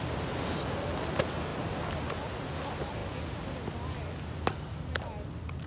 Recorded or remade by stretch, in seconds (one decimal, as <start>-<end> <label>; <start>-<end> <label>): 0.0-1.5 recorded; 1.5-2.1 remade; 2.1-5.7 recorded